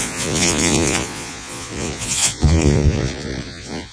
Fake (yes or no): yes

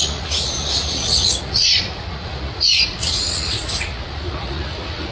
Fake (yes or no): yes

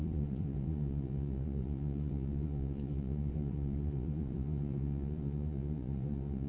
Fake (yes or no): yes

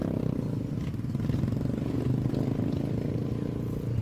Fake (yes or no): no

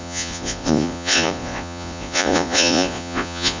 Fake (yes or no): yes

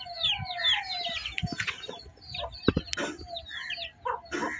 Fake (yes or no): no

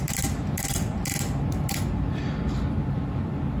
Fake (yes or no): no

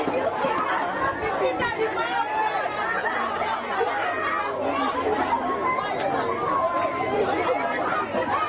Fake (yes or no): no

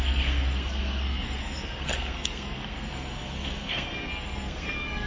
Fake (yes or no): yes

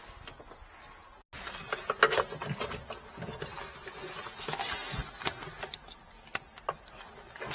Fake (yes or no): no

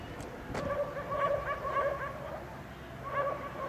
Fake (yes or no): no